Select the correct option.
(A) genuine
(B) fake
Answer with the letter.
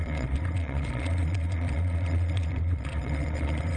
B